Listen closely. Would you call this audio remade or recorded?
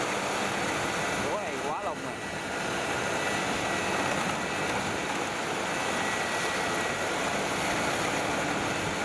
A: recorded